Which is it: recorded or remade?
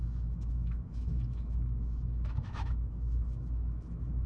remade